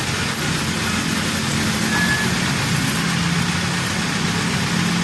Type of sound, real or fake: real